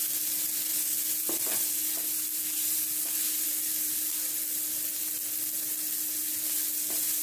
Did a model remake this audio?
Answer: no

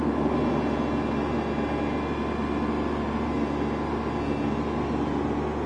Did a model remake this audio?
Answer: no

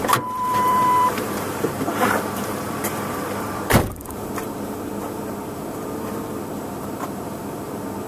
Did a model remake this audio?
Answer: yes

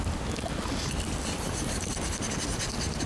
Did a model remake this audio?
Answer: no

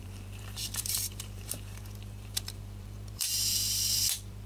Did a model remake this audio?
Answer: yes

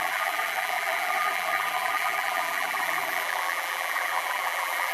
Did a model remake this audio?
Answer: yes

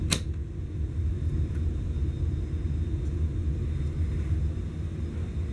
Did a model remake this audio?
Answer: no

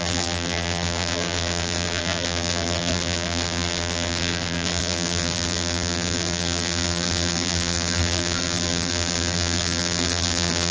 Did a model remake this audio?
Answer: yes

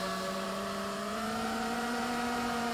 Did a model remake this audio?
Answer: yes